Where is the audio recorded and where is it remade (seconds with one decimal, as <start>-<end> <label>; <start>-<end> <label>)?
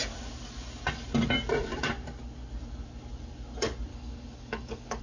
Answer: 0.0-3.9 recorded; 3.9-5.0 remade